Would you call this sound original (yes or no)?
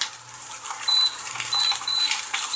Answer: no